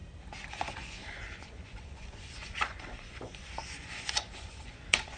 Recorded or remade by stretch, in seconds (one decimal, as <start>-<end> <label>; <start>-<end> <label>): 0.0-0.5 recorded; 0.5-5.2 remade